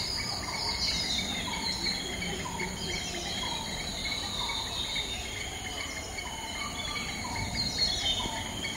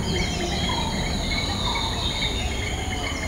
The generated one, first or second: first